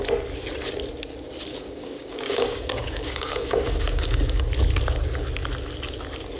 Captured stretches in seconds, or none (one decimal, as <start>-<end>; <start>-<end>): 0.0-1.5; 4.4-6.4